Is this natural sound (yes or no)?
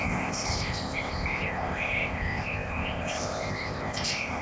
no